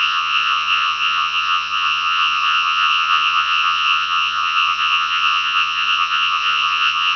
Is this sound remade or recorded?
remade